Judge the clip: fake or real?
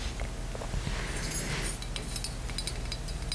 real